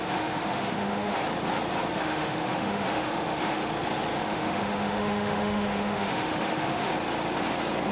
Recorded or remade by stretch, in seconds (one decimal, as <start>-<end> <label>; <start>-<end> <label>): 0.0-1.2 remade; 1.2-1.9 recorded; 1.9-3.6 remade; 3.6-4.2 recorded; 4.2-6.9 remade; 6.9-7.9 recorded